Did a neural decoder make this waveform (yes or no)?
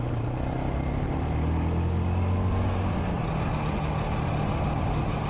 no